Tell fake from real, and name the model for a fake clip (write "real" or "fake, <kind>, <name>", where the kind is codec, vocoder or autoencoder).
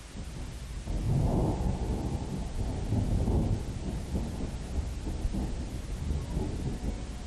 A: real